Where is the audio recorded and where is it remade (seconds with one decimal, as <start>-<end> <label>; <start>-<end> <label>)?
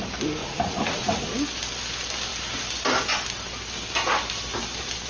0.0-0.4 recorded; 0.4-1.2 remade; 1.2-5.1 recorded